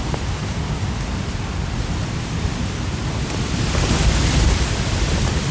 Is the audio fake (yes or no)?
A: no